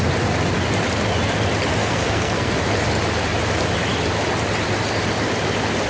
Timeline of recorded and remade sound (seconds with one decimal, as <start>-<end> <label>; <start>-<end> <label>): 0.0-1.8 recorded; 1.8-2.6 remade; 2.6-5.9 recorded